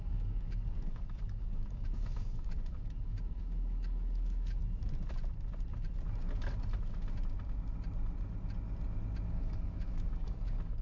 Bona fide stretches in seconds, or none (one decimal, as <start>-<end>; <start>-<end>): 4.6-9.3

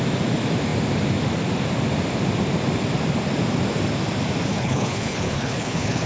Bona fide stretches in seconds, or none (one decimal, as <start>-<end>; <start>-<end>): 0.0-4.5

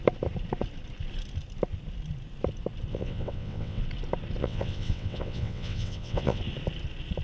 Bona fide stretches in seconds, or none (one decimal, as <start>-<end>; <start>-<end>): 0.0-2.9; 3.8-4.4; 6.4-7.2

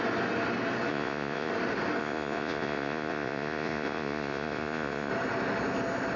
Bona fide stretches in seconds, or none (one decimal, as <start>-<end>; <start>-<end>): 0.0-0.9; 1.5-2.0; 5.1-6.2